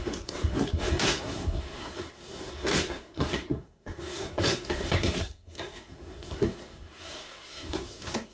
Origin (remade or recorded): remade